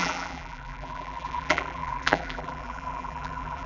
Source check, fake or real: fake